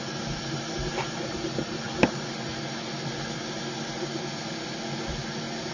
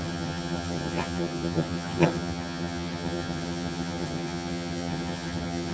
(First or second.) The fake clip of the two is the second